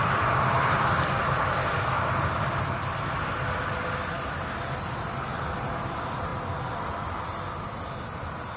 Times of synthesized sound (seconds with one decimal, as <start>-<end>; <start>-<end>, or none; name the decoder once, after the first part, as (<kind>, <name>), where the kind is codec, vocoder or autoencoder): none